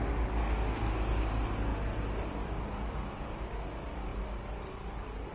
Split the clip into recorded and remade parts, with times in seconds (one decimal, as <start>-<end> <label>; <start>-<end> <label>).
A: 0.0-5.3 recorded